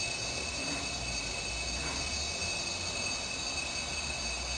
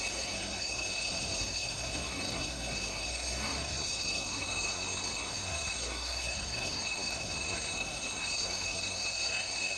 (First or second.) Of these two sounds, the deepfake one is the second